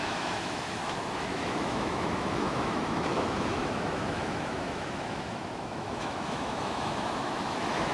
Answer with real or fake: fake